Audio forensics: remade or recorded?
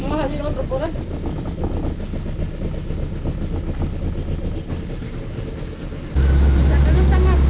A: recorded